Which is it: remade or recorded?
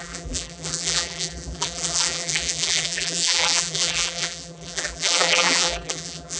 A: remade